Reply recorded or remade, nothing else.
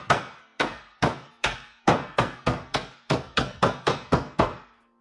remade